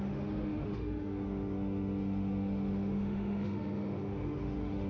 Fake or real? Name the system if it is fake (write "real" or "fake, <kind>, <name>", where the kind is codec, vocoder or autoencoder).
fake, autoencoder, DAC-VAE